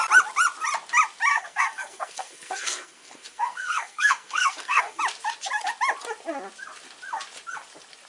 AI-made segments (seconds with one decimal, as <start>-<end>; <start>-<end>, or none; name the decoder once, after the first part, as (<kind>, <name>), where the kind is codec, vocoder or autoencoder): 1.3-5.0 (codec, SNAC)

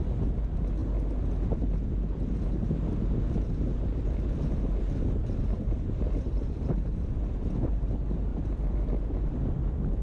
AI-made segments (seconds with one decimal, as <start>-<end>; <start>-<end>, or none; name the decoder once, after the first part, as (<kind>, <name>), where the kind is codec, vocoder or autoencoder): 3.7-7.4 (vocoder, BigVGAN v2); 8.3-9.3

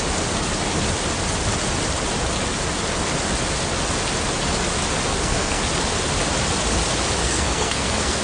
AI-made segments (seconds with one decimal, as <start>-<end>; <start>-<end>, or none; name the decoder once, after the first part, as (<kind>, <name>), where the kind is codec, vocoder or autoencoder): 5.1-5.6 (codec, SNAC); 7.2-8.2

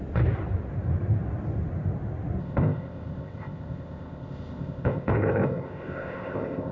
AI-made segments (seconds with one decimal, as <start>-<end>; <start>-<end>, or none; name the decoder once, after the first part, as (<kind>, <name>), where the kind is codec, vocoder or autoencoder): 2.4-6.7 (codec, ZipCodec)

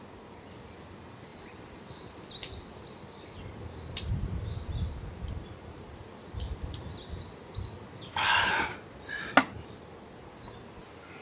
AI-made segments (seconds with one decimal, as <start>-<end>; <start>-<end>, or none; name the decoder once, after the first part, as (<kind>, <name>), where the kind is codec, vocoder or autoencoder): 1.3-2.3 (vocoder, BigVGAN v2); 4.1-5.8

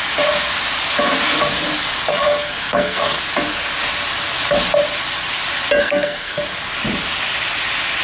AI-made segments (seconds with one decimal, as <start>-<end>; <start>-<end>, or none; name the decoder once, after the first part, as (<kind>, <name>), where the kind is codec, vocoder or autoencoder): 2.1-3.2 (codec, SNAC); 5.8-6.4

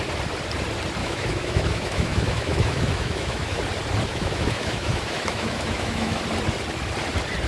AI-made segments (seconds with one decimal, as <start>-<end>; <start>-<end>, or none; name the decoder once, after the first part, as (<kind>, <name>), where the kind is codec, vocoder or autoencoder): 1.0-3.6 (autoencoder, DAC-VAE); 4.1-6.2

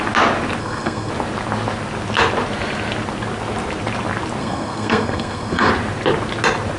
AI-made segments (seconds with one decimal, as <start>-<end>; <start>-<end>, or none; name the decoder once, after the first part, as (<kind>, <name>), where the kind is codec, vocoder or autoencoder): 0.6-1.1 (codec, SNAC); 4.4-5.7